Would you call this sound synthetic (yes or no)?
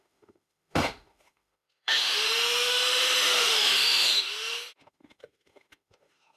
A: yes